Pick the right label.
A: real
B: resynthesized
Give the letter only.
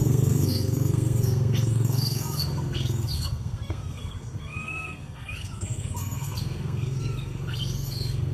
B